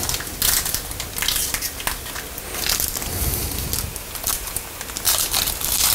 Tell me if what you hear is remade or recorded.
recorded